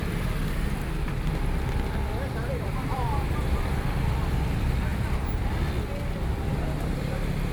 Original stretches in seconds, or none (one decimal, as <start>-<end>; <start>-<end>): 0.0-7.5